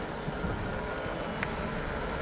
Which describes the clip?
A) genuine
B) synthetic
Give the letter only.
A